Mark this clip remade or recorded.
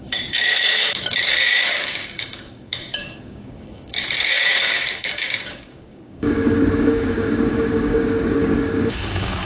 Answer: remade